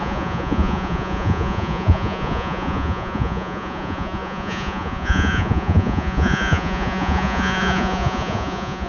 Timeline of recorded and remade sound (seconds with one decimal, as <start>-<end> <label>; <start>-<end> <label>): 0.0-8.9 remade